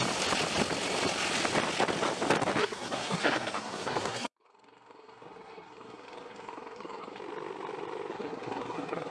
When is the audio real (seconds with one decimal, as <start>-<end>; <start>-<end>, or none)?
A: 0.0-2.6; 7.2-8.1